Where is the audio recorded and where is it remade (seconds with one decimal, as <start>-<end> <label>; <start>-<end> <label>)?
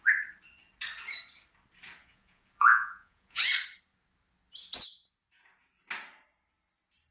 0.0-2.0 recorded; 2.0-3.4 remade; 3.4-7.1 recorded